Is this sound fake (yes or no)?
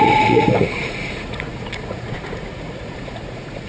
yes